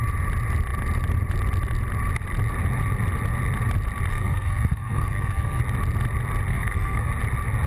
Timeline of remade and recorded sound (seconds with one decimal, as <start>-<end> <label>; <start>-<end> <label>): 0.0-4.1 recorded; 4.1-5.6 remade; 5.6-6.5 recorded; 6.5-7.1 remade; 7.1-7.7 recorded